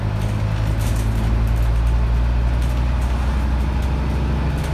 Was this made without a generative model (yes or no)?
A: yes